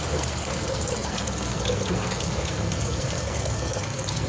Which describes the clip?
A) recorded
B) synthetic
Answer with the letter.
B